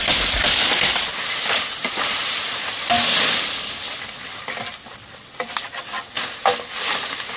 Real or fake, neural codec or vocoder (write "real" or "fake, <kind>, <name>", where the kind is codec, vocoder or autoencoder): real